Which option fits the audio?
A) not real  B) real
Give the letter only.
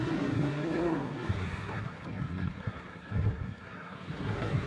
A